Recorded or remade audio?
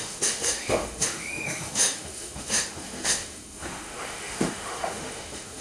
remade